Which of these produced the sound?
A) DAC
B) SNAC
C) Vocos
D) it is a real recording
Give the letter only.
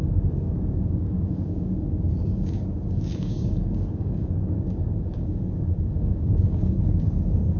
A